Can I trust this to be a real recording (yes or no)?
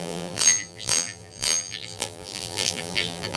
no